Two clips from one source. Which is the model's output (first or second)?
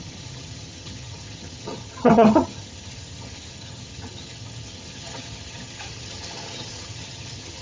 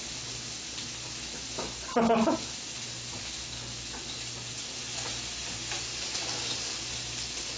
first